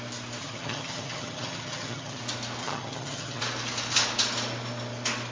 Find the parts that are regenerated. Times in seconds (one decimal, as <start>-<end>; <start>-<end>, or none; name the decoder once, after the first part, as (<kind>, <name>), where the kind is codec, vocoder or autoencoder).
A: 0.4-2.2 (vocoder, HiFi-GAN); 2.6-3.4